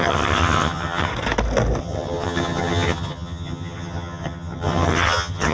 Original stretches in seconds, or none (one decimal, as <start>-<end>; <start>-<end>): 1.1-1.8